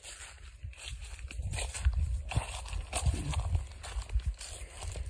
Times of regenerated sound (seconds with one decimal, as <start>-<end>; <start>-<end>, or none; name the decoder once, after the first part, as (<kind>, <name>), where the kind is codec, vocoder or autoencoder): none